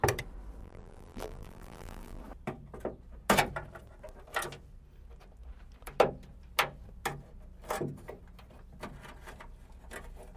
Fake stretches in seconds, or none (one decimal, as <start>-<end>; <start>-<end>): 0.6-2.2

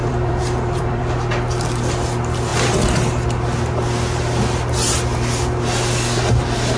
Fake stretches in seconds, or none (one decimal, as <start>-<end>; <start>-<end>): 0.0-1.0

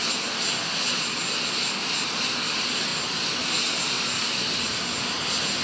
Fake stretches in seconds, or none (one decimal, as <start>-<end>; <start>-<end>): none